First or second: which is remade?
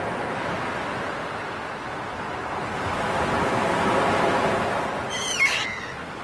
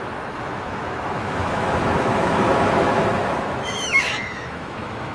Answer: second